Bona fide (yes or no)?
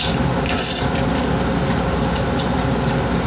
yes